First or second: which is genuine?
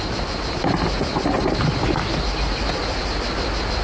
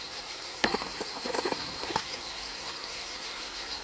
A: first